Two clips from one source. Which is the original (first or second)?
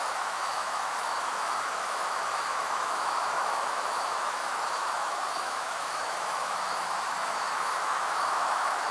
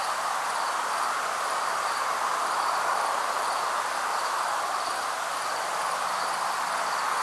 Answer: second